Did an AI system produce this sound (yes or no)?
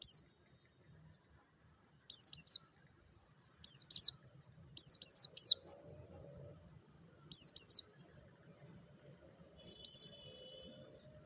no